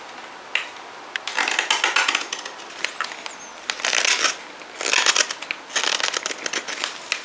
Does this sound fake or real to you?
real